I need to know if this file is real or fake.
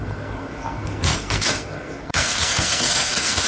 fake